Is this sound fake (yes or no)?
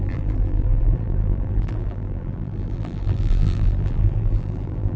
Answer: yes